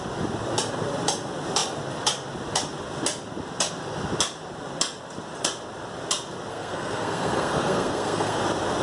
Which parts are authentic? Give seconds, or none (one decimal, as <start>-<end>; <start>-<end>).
0.0-6.5; 8.4-8.8